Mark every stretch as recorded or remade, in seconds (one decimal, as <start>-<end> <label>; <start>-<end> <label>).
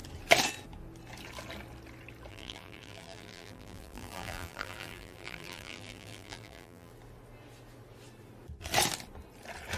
0.0-2.3 recorded; 2.3-6.9 remade; 6.9-9.8 recorded